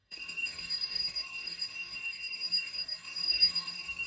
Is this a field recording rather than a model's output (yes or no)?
no